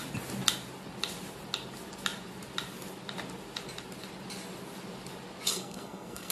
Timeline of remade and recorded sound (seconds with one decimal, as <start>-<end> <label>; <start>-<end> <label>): 0.0-5.5 recorded; 5.5-6.3 remade